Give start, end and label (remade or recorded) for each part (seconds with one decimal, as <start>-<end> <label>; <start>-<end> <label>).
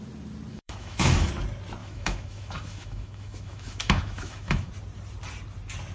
0.0-0.5 recorded; 0.5-1.3 remade; 1.3-1.8 recorded; 1.8-4.7 remade; 4.7-5.9 recorded